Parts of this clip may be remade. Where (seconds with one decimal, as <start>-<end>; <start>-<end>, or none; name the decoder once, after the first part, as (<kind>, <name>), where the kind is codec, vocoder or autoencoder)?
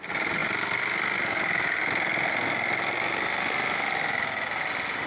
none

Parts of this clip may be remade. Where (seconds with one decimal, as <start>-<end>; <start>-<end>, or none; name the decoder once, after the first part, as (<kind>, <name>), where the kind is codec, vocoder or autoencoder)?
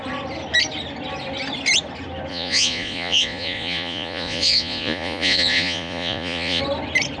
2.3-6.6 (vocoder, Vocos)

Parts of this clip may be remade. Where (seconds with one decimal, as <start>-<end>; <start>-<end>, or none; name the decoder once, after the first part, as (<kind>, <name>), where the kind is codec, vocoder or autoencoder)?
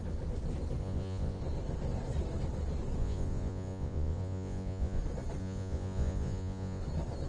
0.8-1.4 (vocoder, Vocos); 3.0-5.0; 5.4-6.8